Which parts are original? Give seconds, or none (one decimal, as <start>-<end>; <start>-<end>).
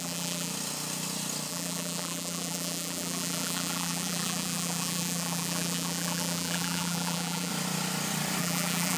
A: 0.5-1.5; 7.5-8.4